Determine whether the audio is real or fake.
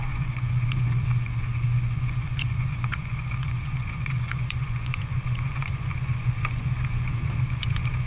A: fake